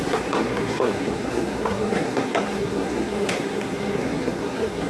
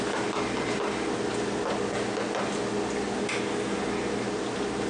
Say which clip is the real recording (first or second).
second